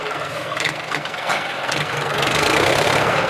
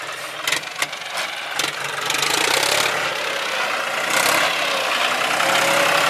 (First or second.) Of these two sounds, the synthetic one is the first